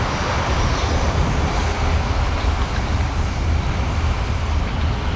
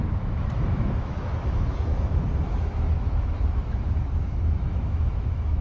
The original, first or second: first